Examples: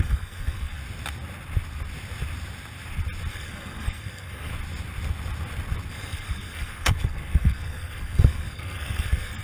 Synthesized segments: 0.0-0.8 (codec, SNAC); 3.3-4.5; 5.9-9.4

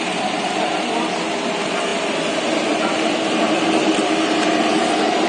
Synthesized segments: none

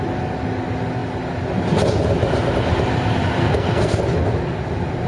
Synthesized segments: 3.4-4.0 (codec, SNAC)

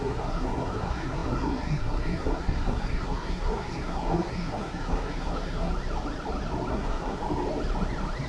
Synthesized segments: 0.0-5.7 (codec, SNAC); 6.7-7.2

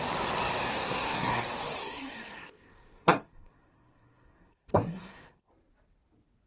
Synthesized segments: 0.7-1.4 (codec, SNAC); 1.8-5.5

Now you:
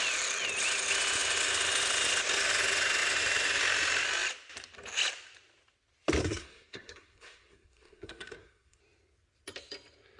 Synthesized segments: 6.2-8.8 (codec, SNAC)

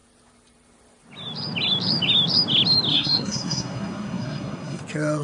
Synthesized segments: 2.9-4.8 (codec, SNAC)

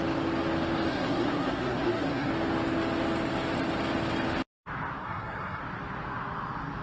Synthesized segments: 0.9-2.3 (codec, SNAC); 5.0-5.6